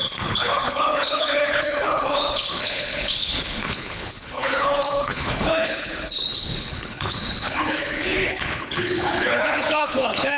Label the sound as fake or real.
fake